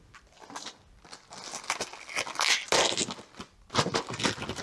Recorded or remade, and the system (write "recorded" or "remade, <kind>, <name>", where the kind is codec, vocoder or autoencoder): recorded